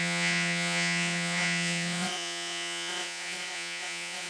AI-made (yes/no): yes